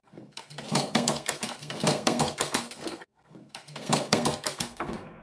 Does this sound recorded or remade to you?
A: remade